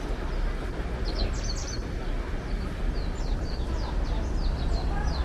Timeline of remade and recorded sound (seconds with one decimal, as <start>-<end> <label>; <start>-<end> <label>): 0.0-5.2 recorded